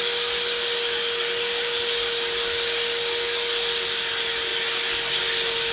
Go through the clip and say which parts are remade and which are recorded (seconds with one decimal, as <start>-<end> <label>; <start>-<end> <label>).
0.0-5.7 recorded